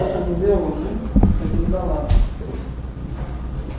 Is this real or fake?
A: real